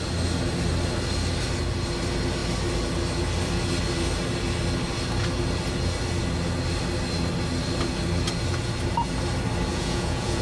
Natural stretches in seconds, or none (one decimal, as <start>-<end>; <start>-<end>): 0.0-9.7